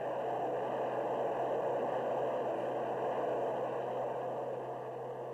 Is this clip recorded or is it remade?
recorded